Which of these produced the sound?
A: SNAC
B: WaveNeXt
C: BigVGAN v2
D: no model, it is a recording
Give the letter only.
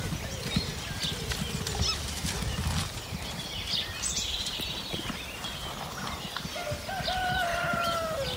D